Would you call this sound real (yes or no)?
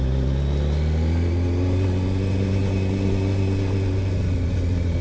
yes